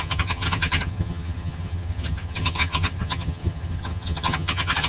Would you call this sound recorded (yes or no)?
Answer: no